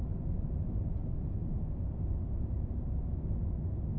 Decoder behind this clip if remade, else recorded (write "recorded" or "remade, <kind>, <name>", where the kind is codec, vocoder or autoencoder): recorded